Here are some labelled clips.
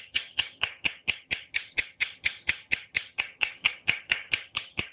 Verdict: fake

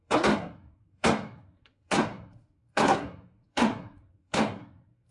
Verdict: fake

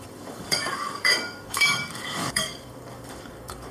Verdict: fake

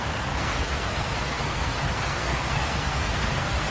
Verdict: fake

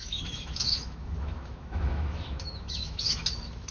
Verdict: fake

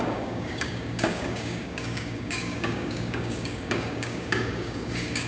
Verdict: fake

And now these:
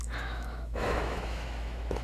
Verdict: fake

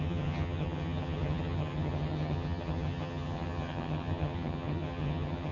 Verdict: fake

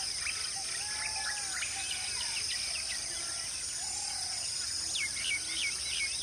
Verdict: real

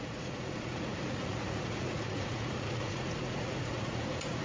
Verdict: fake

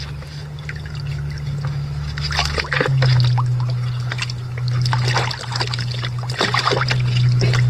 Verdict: real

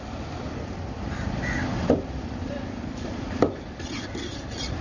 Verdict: fake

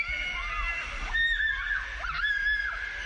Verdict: real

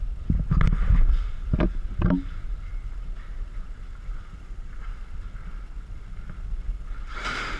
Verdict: real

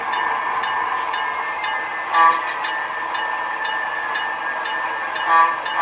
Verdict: real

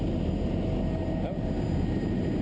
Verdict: real